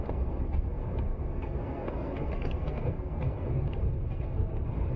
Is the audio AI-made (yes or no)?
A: yes